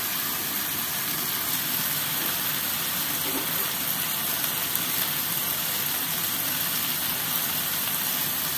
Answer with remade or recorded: recorded